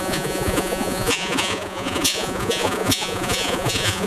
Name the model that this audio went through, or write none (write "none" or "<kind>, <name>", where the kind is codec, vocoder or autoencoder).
vocoder, Vocos